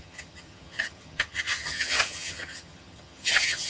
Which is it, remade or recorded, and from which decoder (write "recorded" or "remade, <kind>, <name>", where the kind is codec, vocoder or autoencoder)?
remade, vocoder, HiFi-GAN